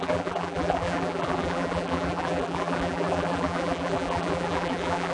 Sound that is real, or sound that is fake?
fake